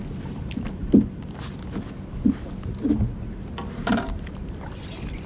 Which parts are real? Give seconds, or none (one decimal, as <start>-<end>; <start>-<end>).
0.0-5.3